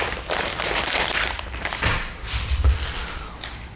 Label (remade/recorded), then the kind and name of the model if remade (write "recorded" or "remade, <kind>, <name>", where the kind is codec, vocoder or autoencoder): remade, vocoder, BigVGAN v2